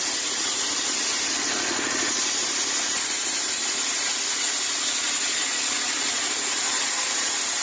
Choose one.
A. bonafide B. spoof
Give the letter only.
A